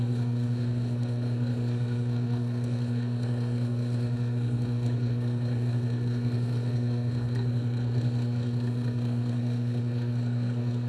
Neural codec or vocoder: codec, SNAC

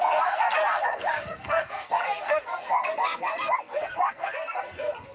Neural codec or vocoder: codec, SNAC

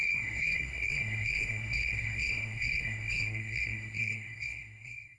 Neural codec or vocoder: codec, SNAC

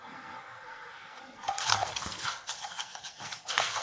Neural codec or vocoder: codec, SNAC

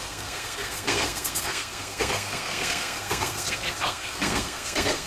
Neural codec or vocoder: codec, SNAC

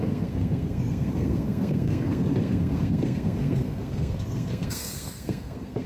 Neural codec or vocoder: codec, SNAC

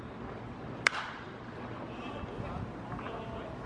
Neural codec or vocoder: none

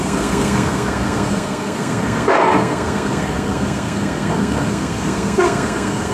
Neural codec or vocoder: codec, SNAC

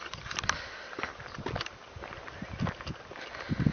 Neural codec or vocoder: none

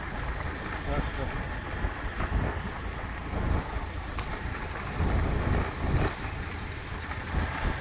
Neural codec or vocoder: none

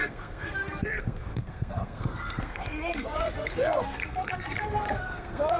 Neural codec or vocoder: codec, SNAC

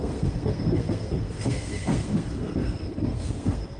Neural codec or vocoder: codec, SNAC